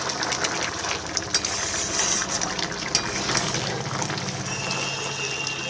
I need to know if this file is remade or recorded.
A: recorded